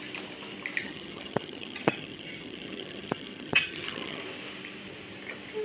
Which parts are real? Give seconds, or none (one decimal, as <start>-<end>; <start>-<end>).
0.0-0.8; 4.2-5.6

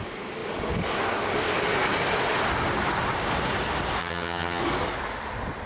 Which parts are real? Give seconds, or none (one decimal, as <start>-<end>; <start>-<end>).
0.0-4.0; 4.6-5.7

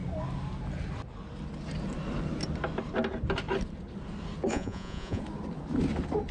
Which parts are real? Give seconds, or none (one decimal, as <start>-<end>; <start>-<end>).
0.0-4.5; 5.2-6.3

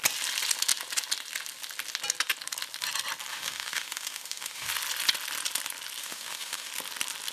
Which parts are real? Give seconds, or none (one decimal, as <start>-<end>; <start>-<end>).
0.0-3.3; 4.7-6.0; 6.7-7.3

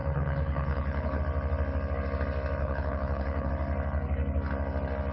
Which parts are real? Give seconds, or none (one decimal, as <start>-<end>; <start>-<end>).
1.2-2.6; 3.5-5.1

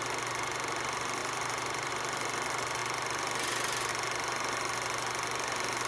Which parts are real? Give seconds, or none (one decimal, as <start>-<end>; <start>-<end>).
0.0-1.2; 1.9-5.9